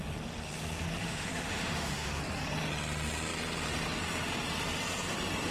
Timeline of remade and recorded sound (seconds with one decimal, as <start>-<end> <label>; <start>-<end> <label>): 0.0-1.0 recorded; 1.0-2.2 remade; 2.2-5.5 recorded